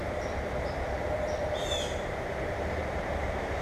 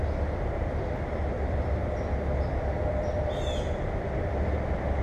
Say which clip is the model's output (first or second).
first